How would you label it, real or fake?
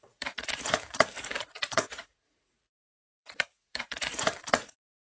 fake